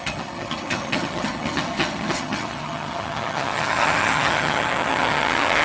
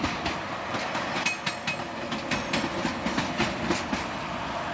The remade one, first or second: first